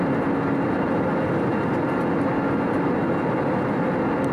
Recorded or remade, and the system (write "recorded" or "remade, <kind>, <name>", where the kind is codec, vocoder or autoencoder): recorded